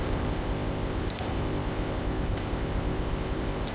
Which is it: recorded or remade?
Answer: remade